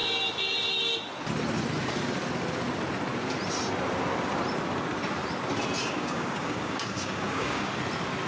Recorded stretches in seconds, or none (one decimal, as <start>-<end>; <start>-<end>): 0.0-5.8; 7.7-8.3